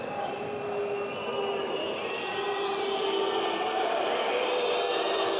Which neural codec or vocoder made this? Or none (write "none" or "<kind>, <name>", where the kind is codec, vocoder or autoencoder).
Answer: none